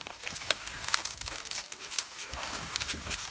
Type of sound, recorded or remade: remade